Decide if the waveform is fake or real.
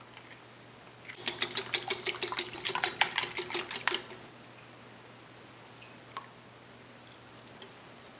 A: real